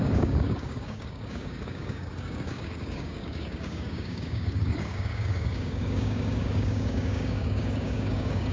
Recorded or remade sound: remade